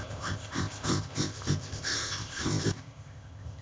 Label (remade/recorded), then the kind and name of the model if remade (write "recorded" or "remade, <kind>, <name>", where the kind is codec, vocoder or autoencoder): remade, codec, ZipCodec